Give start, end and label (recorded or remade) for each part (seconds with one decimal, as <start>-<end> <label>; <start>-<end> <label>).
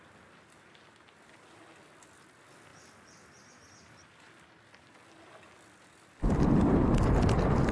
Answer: 0.0-7.7 recorded